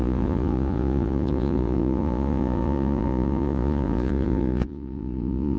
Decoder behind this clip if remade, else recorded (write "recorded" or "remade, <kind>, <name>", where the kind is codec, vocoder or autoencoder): remade, vocoder, Vocos